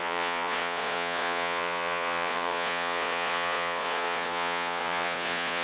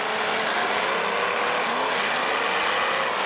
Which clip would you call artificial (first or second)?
first